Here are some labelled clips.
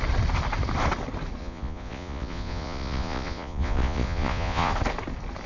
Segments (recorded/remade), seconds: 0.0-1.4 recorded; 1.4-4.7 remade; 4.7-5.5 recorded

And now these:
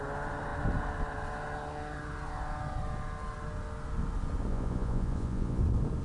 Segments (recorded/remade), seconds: 0.0-4.5 recorded; 4.5-5.6 remade; 5.6-6.0 recorded